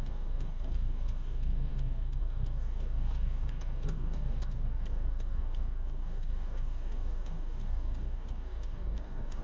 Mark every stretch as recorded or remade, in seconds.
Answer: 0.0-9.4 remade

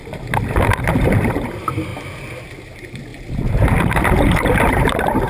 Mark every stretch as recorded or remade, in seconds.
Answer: 0.0-1.0 recorded; 1.0-1.9 remade; 1.9-2.6 recorded; 2.6-3.1 remade; 3.1-3.8 recorded; 3.8-5.3 remade

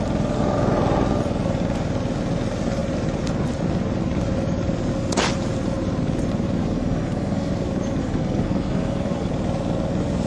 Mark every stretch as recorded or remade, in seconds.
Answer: 0.0-6.6 recorded; 6.6-7.5 remade; 7.5-8.0 recorded; 8.0-9.3 remade; 9.3-10.3 recorded